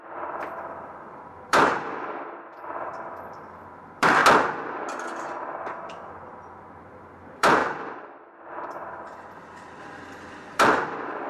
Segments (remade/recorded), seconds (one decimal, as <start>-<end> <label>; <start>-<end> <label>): 0.0-2.9 remade; 2.9-3.5 recorded; 3.5-4.2 remade; 4.2-6.8 recorded; 6.8-11.3 remade